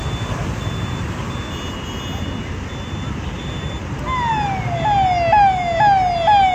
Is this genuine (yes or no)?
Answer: yes